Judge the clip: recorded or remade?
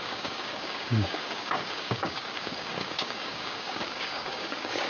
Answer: remade